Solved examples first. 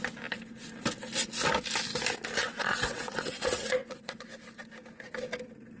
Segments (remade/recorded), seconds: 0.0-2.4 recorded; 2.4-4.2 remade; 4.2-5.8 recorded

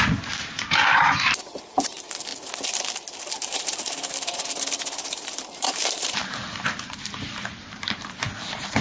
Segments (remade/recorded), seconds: 0.0-2.3 remade; 2.3-3.3 recorded; 3.3-8.8 remade

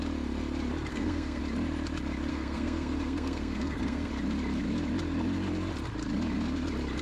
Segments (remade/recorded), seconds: 0.0-0.9 recorded; 0.9-1.4 remade; 1.4-2.3 recorded; 2.3-4.1 remade; 4.1-7.0 recorded

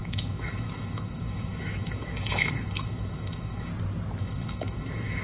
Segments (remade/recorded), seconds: 0.0-3.7 remade; 3.7-4.2 recorded; 4.2-5.2 remade

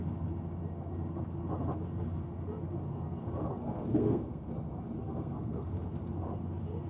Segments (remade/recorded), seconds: 0.0-3.9 recorded; 3.9-4.5 remade; 4.5-5.0 recorded; 5.0-5.7 remade; 5.7-6.9 recorded

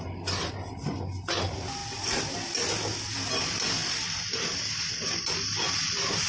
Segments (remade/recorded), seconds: 0.0-6.3 recorded

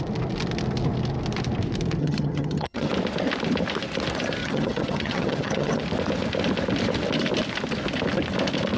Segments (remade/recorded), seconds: 0.0-2.0 recorded; 2.0-2.9 remade; 2.9-4.4 recorded; 4.4-5.8 remade; 5.8-8.8 recorded